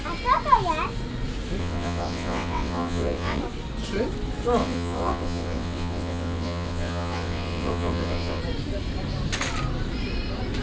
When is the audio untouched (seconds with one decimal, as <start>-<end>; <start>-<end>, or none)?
0.0-1.6; 3.4-4.6; 8.4-10.6